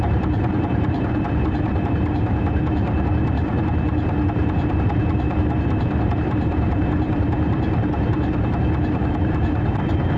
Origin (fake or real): fake